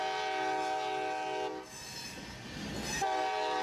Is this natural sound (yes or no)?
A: yes